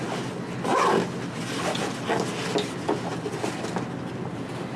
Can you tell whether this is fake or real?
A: real